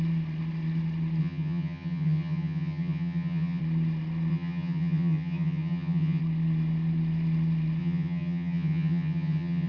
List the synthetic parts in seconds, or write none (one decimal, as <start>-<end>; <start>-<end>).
1.2-3.6; 4.3-6.2; 7.8-9.7